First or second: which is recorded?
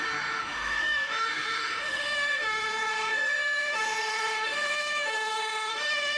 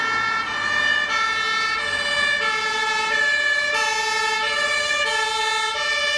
second